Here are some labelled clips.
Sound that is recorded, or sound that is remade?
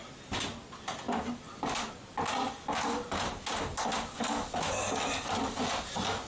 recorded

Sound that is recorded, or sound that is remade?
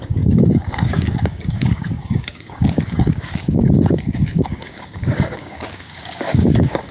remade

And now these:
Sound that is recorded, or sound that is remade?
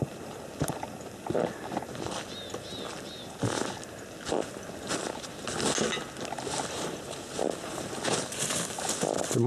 recorded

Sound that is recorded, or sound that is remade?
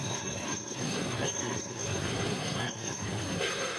remade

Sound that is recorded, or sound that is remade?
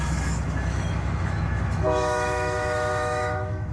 remade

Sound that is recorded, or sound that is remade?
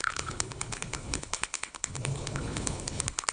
remade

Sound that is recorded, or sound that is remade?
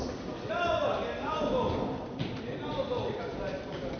recorded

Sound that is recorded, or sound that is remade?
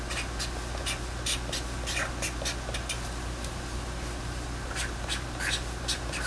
recorded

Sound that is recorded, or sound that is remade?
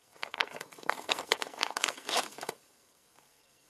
remade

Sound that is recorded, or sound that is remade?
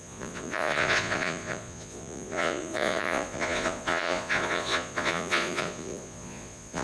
remade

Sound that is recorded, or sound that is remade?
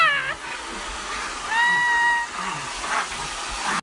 recorded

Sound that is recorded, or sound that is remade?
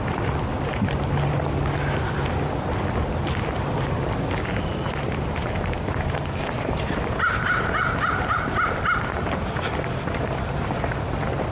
recorded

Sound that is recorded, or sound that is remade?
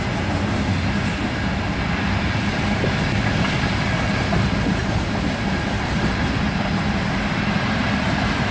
recorded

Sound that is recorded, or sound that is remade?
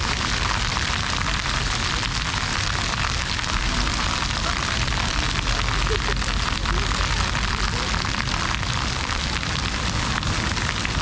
remade